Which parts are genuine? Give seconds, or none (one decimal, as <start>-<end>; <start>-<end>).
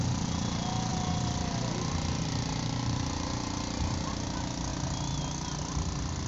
0.0-6.3